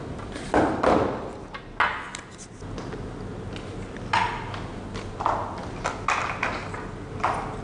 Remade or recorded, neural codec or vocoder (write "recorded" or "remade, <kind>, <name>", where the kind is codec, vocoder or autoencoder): recorded